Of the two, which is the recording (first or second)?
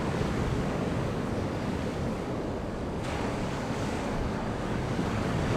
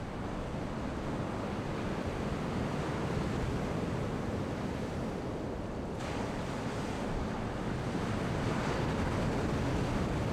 second